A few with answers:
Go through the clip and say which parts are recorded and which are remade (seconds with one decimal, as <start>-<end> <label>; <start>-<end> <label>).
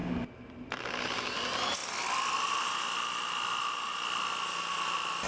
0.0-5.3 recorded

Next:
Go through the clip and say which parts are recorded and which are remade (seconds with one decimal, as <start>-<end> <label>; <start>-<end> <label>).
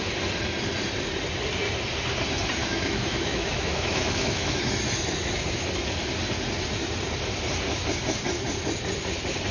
0.0-2.6 recorded; 2.6-4.6 remade; 4.6-9.5 recorded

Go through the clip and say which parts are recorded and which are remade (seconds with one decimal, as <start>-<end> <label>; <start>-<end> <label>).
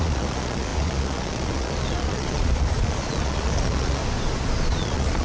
0.0-4.0 remade; 4.0-4.7 recorded; 4.7-5.2 remade